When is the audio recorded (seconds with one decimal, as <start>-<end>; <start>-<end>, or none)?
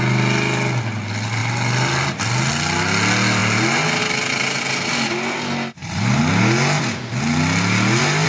0.0-8.3